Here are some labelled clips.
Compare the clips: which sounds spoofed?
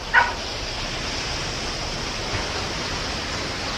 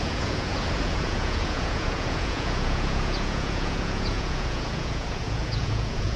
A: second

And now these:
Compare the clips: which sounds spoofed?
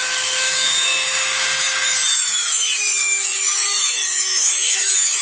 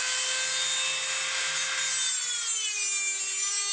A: first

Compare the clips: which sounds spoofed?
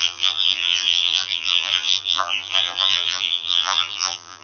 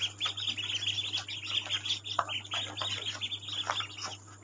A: first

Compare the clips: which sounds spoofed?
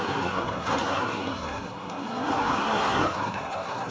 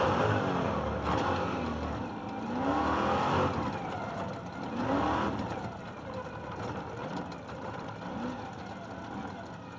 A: first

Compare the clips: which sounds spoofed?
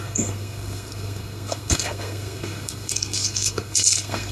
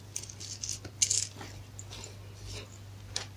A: first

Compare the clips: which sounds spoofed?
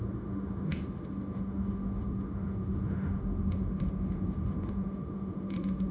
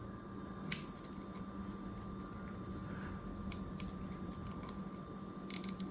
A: first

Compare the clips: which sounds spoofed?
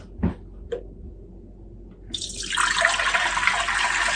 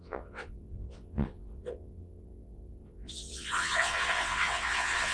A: second